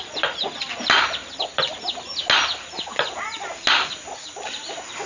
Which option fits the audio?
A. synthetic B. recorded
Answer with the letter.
B